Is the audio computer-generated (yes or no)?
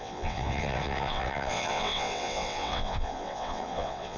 yes